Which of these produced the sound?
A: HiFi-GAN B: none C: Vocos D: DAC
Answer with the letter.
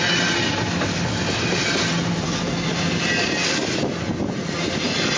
B